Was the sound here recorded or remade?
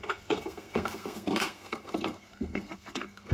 remade